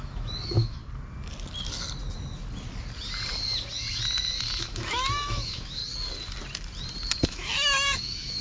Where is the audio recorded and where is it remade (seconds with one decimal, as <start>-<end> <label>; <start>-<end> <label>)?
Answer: 0.0-0.8 remade; 0.8-4.6 recorded; 4.6-5.8 remade; 5.8-7.2 recorded; 7.2-8.4 remade